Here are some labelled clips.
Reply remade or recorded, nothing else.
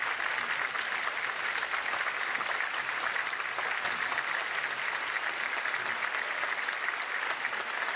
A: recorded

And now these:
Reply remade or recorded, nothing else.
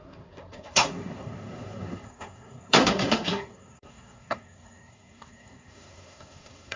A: remade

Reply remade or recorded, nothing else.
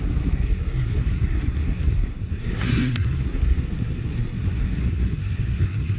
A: remade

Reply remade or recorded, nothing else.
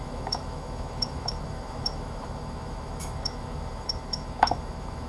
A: remade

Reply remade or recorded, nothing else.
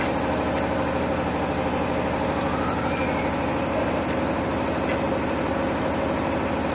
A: recorded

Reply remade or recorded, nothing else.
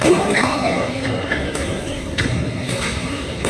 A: remade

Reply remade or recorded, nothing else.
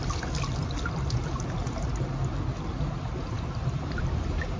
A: recorded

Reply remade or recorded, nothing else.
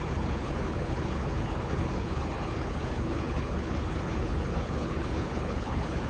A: remade